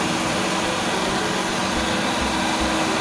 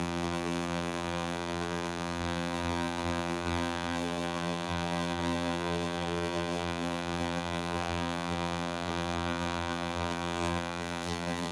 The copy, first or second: second